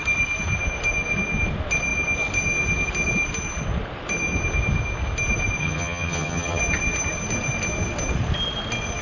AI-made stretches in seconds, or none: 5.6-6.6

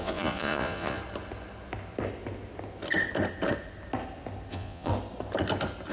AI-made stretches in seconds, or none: 0.0-1.0; 4.5-4.9